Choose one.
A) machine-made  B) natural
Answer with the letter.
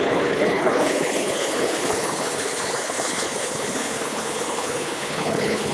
A